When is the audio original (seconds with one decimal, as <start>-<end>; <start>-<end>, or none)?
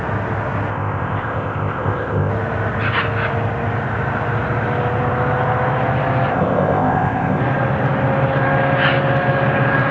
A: 0.0-0.7; 2.3-6.3; 7.4-9.9